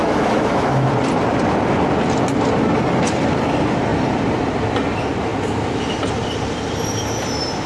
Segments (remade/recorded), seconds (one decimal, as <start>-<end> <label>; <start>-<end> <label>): 0.0-0.9 remade; 0.9-7.7 recorded